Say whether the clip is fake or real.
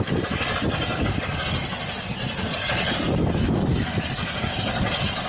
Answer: real